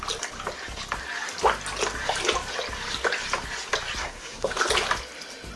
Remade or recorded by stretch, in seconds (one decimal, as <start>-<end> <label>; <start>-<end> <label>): 0.0-4.0 recorded; 4.0-4.6 remade; 4.6-5.6 recorded